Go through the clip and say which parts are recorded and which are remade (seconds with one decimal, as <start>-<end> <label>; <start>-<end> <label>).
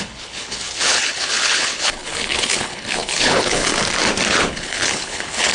0.0-3.7 remade; 3.7-4.3 recorded; 4.3-5.5 remade